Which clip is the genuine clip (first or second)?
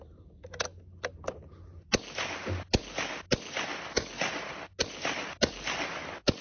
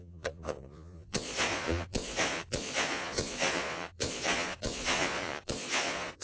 first